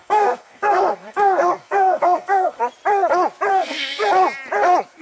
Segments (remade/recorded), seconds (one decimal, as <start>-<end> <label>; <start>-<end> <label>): 0.0-2.6 remade; 2.6-3.5 recorded; 3.5-4.0 remade; 4.0-5.0 recorded